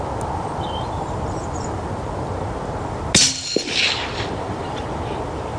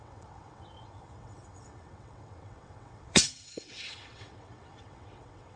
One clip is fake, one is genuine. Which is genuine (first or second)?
first